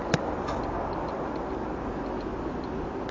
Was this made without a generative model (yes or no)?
yes